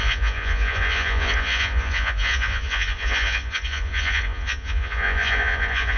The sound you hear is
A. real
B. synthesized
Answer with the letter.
B